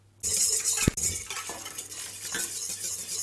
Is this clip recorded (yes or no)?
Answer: yes